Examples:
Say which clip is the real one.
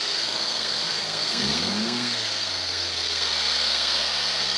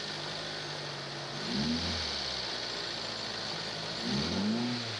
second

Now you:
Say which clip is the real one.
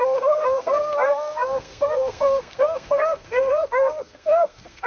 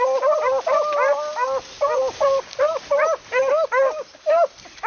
second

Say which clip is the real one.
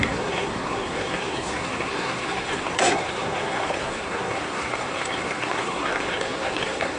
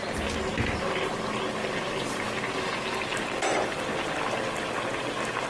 second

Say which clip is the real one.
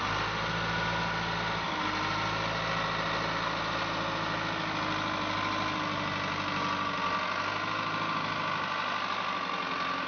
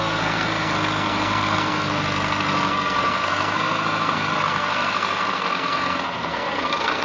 first